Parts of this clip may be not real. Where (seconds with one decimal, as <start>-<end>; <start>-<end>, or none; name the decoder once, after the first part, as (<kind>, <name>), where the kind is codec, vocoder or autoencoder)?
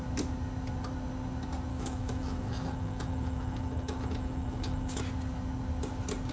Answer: 1.7-5.0 (autoencoder, DAC-VAE)